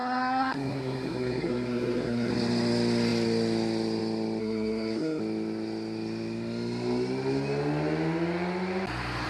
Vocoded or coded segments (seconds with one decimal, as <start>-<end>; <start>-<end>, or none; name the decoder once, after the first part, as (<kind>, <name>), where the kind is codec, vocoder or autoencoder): 0.0-2.3 (codec, SNAC); 4.4-5.2